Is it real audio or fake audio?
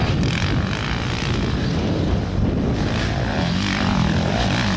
real